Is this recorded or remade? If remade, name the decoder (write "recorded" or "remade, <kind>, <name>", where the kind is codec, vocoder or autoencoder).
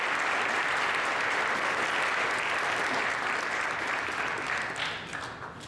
recorded